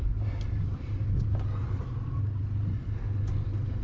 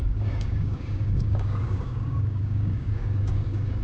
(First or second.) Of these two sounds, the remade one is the second